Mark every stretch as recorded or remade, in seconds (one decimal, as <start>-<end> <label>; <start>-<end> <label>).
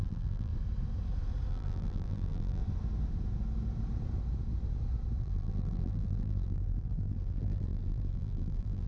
0.0-0.5 remade; 0.5-1.5 recorded; 1.5-2.6 remade; 2.6-5.2 recorded; 5.2-8.9 remade